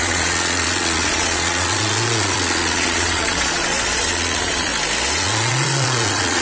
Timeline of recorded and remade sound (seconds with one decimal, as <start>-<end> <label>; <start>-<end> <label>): 0.0-4.7 remade; 4.7-5.2 recorded; 5.2-6.4 remade